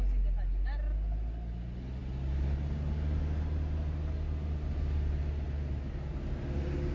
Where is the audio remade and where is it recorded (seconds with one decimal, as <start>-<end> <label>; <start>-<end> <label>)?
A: 0.0-6.9 recorded